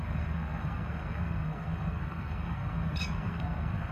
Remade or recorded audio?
remade